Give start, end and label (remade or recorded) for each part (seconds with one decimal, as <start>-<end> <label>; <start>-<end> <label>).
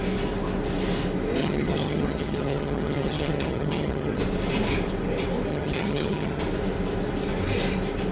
0.0-1.4 recorded; 1.4-4.2 remade; 4.2-5.5 recorded; 5.5-6.4 remade; 6.4-8.1 recorded